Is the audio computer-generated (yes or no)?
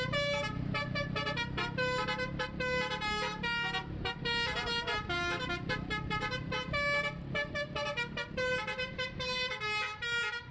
no